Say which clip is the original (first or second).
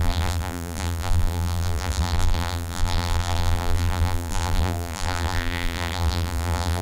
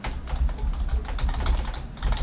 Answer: second